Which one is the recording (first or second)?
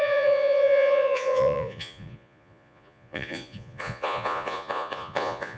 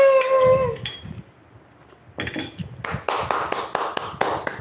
second